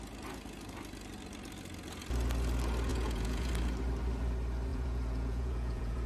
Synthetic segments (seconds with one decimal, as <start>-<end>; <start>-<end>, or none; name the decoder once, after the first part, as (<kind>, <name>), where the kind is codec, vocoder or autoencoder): 2.9-3.5 (vocoder, Vocos); 4.7-6.1